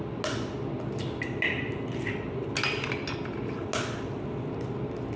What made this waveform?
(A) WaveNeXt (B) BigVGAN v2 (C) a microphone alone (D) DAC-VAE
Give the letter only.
C